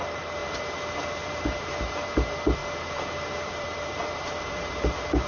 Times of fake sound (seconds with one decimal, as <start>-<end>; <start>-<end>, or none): 0.0-5.3